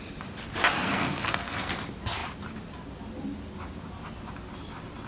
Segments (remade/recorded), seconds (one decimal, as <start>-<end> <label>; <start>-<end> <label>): 0.0-0.8 recorded; 0.8-1.7 remade; 1.7-5.1 recorded